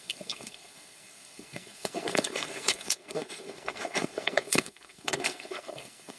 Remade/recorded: remade